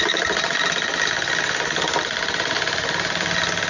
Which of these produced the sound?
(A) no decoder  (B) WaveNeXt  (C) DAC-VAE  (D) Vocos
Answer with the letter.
A